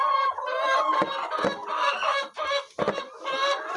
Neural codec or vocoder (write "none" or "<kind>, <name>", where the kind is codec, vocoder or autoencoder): none